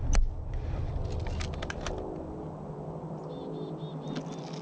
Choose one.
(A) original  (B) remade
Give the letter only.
A